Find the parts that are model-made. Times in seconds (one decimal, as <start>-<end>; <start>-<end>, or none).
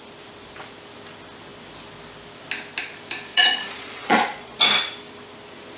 3.3-4.6